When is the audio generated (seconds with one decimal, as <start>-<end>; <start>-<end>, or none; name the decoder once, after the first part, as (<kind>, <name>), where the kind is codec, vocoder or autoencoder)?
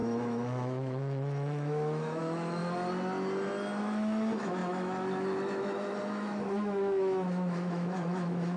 0.0-2.6 (autoencoder, DAC-VAE); 3.8-8.6